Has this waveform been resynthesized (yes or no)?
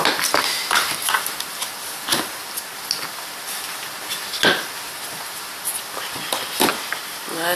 no